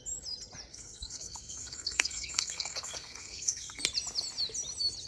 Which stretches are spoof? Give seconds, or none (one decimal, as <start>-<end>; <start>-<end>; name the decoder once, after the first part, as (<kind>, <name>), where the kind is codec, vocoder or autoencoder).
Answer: 0.7-3.8 (codec, SNAC)